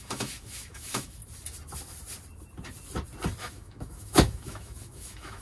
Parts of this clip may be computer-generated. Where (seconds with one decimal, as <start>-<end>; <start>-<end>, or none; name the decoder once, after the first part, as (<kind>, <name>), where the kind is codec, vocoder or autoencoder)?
0.0-1.2 (autoencoder, DAC-VAE); 3.4-5.4